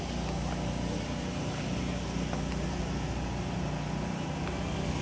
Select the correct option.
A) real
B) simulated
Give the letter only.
A